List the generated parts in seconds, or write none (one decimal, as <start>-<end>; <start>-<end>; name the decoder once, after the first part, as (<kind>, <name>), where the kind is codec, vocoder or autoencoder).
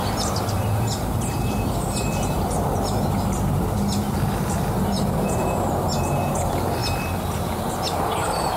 0.0-6.8 (vocoder, BigVGAN v2); 7.4-8.6